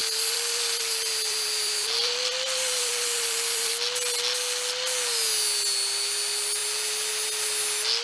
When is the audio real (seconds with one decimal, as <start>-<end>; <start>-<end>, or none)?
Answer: 3.7-8.0